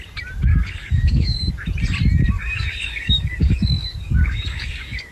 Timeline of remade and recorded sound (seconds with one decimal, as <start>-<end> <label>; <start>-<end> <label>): 0.0-0.5 recorded; 0.5-1.5 remade; 1.5-2.4 recorded; 2.4-5.1 remade